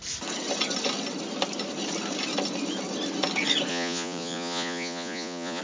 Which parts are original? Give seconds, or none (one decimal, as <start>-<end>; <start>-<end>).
0.0-3.7